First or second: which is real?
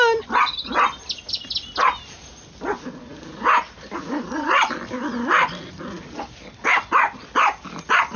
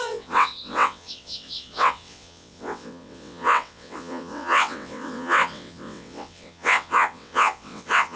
first